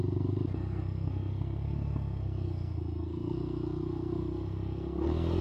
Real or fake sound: fake